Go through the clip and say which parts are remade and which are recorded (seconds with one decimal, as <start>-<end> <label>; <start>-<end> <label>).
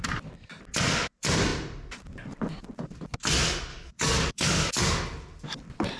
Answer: 0.0-3.7 recorded; 3.7-4.8 remade; 4.8-6.0 recorded